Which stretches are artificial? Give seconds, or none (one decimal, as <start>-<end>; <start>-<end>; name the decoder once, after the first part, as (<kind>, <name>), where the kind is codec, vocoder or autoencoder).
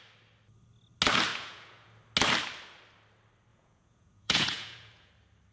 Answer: 1.3-1.9 (vocoder, Vocos); 3.5-5.1